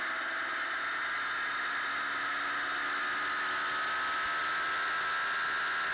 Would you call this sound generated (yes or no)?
no